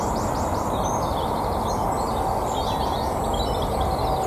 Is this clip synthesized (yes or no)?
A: no